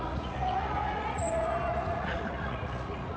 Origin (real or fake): fake